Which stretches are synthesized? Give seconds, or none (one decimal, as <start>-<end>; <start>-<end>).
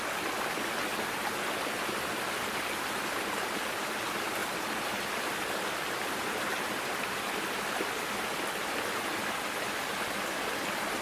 none